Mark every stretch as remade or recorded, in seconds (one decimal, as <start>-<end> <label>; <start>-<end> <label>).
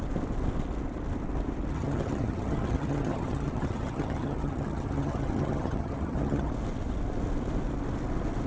0.0-1.7 recorded; 1.7-6.5 remade; 6.5-8.5 recorded